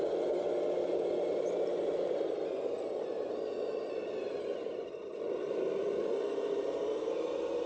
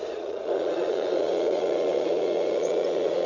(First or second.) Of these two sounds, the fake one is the second